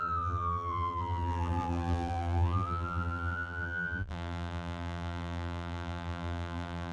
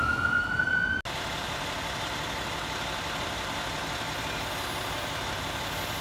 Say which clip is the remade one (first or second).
first